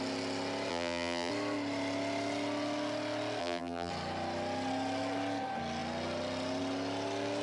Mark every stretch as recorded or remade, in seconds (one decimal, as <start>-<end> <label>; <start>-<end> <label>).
0.0-0.7 recorded; 0.7-1.3 remade; 1.3-3.4 recorded; 3.4-3.9 remade; 3.9-7.4 recorded